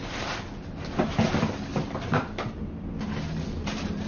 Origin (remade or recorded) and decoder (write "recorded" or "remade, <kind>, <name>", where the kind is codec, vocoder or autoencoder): recorded